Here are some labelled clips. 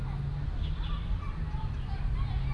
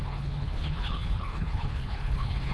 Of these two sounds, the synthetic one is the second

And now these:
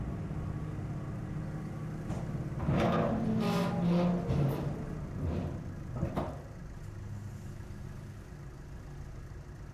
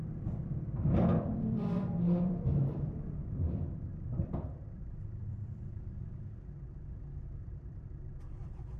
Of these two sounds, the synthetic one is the second